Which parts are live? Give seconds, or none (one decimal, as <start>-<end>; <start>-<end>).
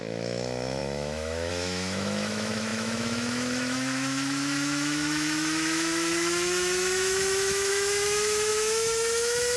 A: none